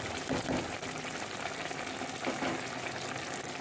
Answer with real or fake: real